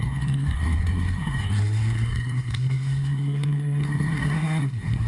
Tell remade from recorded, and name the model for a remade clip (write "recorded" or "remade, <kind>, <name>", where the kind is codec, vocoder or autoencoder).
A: remade, codec, SNAC